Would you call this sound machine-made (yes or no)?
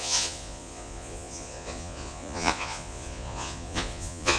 yes